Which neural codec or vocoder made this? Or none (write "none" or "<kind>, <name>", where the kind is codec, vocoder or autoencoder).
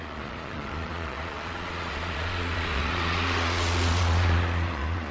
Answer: vocoder, Vocos